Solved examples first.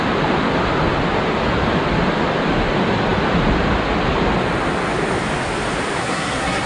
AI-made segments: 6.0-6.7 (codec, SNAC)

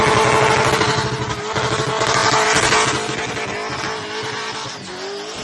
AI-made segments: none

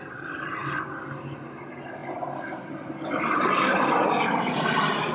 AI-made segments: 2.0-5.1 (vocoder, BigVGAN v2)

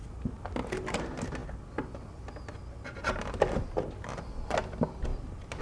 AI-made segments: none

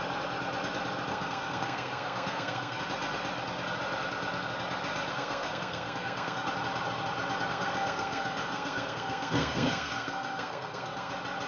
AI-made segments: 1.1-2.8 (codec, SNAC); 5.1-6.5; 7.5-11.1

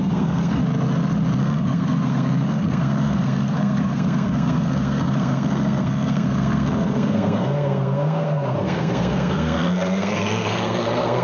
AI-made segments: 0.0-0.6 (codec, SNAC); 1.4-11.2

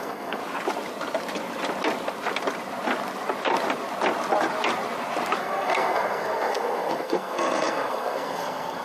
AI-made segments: 0.0-0.4 (codec, SNAC); 5.4-8.8

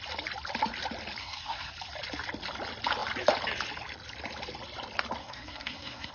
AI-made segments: 1.2-1.7 (codec, SNAC); 5.2-6.1